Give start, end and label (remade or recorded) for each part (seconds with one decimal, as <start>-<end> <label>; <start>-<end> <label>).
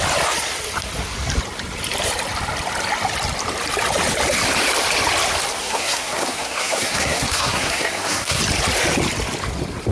0.0-5.6 recorded; 5.6-8.4 remade; 8.4-9.9 recorded